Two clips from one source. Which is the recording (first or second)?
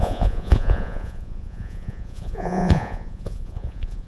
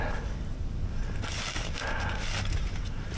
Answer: second